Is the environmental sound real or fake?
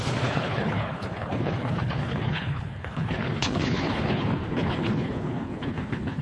fake